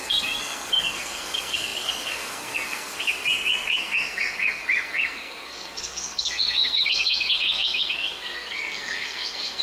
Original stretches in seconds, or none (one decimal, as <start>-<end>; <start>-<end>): none